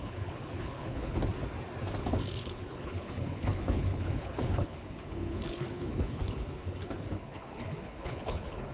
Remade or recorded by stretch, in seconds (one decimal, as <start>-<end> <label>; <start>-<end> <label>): 0.0-1.3 remade; 1.3-2.0 recorded; 2.0-8.7 remade